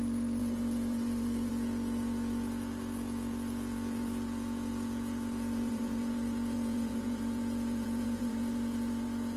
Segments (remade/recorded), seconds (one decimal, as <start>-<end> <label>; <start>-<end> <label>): 0.0-9.4 remade